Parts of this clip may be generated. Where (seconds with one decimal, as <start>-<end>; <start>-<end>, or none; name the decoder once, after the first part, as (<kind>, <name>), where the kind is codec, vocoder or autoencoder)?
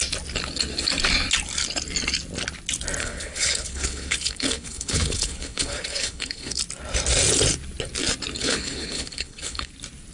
3.0-6.6 (codec, HILCodec); 8.4-9.7